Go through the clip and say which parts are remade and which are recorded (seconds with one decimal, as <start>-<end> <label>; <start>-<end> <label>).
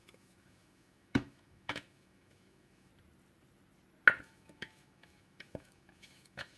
0.0-2.9 remade; 2.9-4.2 recorded; 4.2-6.6 remade